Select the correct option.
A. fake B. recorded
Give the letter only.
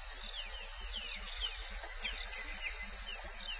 B